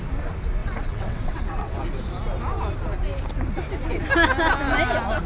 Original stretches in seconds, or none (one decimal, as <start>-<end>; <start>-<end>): 0.0-0.6; 1.8-5.3